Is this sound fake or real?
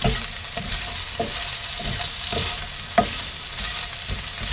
real